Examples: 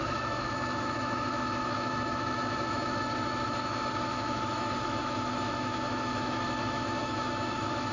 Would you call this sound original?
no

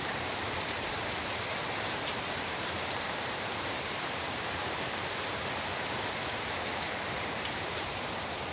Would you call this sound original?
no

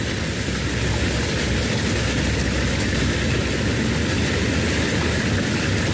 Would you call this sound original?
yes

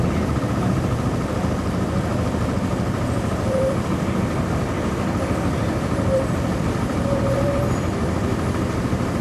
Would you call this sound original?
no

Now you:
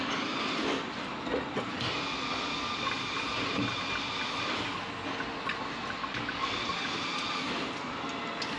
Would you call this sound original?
yes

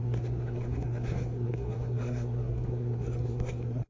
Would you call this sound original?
no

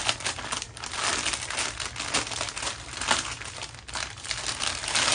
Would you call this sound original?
yes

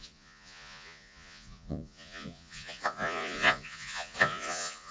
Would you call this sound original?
no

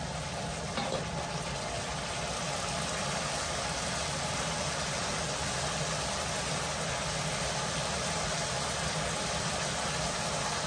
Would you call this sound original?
yes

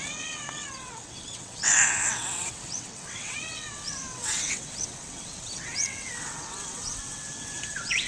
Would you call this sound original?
no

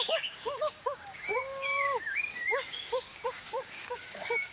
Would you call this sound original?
no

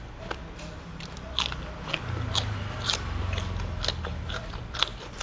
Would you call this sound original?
yes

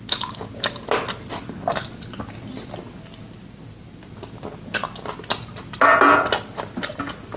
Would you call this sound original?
yes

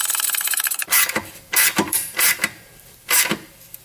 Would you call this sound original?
no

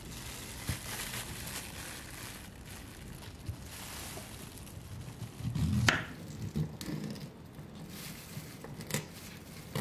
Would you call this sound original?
yes